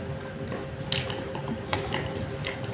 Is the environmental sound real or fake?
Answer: real